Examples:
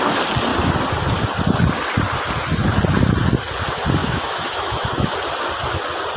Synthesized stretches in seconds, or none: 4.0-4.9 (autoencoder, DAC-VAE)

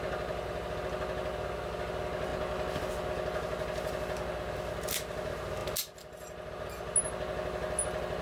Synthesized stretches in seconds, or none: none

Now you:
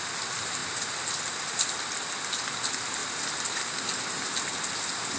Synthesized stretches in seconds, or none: none

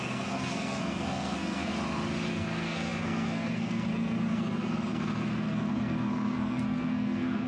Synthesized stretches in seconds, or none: 0.0-1.7 (codec, SNAC); 2.3-7.5